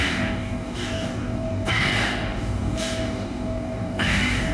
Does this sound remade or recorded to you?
remade